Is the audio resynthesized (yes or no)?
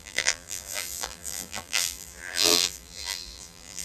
yes